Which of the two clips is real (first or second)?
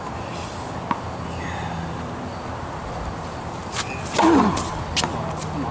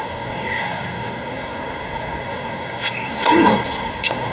first